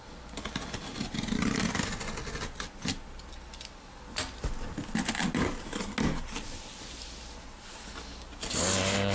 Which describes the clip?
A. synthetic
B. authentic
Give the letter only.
B